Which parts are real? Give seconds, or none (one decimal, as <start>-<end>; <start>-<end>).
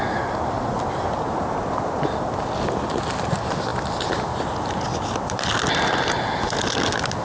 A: 0.0-7.2